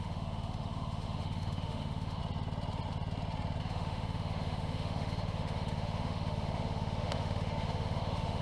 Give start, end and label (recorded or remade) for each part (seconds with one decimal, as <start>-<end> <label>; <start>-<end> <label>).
0.0-2.2 remade; 2.2-3.6 recorded; 3.6-8.4 remade